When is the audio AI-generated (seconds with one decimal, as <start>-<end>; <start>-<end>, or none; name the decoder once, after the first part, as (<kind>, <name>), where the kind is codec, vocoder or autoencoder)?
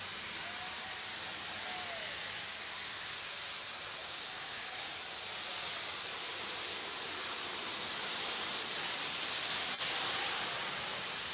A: 4.0-4.9 (codec, DAC)